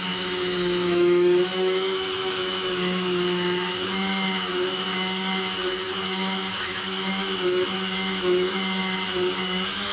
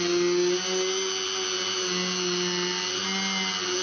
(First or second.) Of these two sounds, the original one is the second